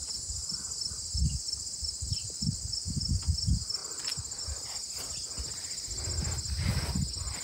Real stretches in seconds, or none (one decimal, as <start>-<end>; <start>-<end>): 0.0-0.4; 3.2-3.8; 4.4-7.4